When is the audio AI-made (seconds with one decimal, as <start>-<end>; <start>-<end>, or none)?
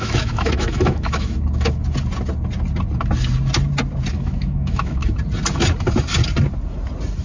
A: 0.0-1.8; 4.1-5.0